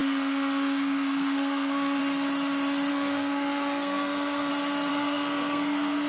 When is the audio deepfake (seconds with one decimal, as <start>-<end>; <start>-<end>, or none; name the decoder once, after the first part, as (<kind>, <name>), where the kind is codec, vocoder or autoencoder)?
0.0-2.0 (codec, SNAC); 2.9-4.5; 4.9-6.1